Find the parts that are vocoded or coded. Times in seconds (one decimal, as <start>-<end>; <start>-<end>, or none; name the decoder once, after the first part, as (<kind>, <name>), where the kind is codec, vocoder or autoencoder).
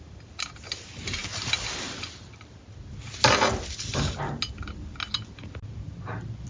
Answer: none